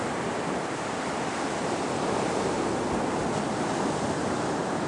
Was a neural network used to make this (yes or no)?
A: no